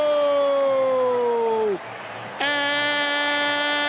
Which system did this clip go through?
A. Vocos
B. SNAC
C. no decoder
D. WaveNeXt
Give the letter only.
C